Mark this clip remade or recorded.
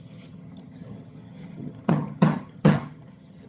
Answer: remade